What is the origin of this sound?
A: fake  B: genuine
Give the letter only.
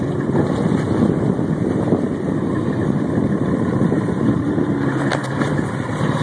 B